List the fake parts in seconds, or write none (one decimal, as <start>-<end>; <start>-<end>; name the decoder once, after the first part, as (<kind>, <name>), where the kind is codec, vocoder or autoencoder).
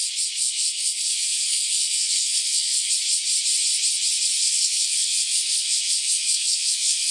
0.4-2.9 (codec, SNAC); 4.4-7.1